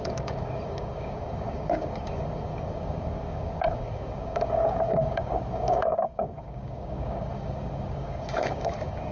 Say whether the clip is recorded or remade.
remade